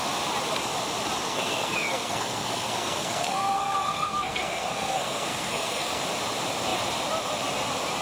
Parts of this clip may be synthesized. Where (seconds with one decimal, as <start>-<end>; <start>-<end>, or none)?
1.2-6.0